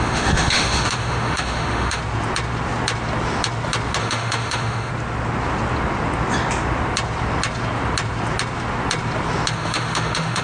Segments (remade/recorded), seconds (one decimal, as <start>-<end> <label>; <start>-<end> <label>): 0.0-2.0 remade; 2.0-4.0 recorded; 4.0-4.9 remade; 4.9-9.5 recorded; 9.5-10.4 remade